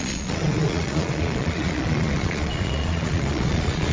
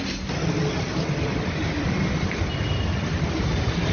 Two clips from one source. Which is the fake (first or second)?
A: first